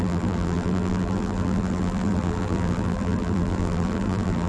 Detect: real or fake fake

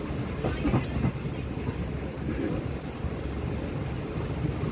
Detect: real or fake real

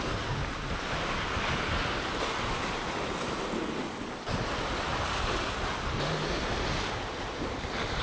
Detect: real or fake real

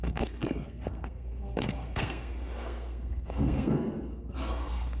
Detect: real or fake fake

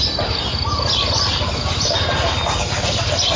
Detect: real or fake real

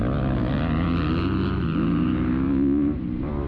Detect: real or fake real